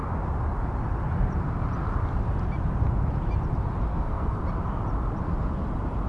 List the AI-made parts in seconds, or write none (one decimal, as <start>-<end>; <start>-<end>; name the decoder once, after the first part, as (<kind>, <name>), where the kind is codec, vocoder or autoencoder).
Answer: 3.9-4.4 (codec, SNAC)